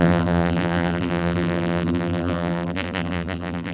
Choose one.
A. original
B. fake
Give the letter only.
B